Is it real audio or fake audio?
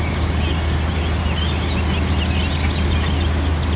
real